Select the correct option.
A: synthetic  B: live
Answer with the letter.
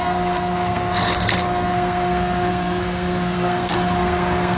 A